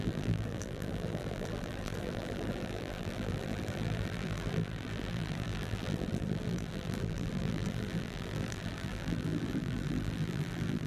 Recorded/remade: remade